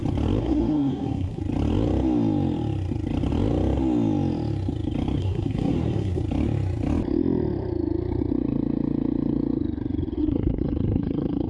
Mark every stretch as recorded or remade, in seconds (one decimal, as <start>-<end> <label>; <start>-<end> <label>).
0.0-0.4 recorded; 0.4-1.4 remade; 1.4-5.2 recorded; 5.2-6.2 remade; 6.2-10.2 recorded; 10.2-11.5 remade